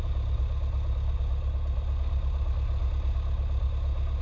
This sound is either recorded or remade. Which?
recorded